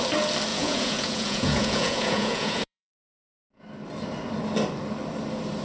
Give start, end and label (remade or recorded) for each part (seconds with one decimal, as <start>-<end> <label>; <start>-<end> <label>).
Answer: 0.0-0.5 recorded; 0.5-3.6 remade; 3.6-5.6 recorded